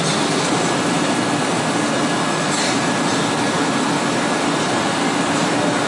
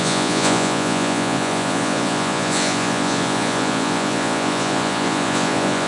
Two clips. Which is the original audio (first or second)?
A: first